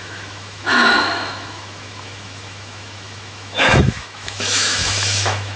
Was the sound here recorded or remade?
remade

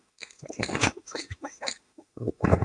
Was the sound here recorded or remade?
remade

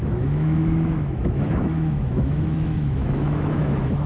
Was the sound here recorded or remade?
remade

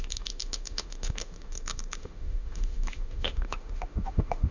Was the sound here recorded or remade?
remade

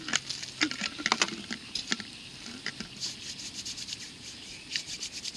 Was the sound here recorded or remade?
recorded